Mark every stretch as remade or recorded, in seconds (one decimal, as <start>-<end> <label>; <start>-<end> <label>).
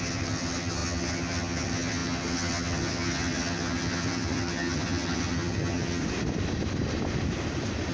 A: 0.0-6.0 remade; 6.0-7.9 recorded